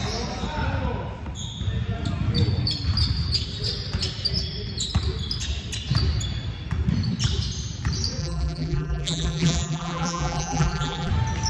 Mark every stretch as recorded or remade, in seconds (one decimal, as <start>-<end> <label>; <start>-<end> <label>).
0.0-8.2 recorded; 8.2-11.1 remade; 11.1-11.5 recorded